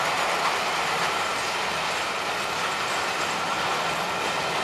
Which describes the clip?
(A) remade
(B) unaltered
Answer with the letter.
B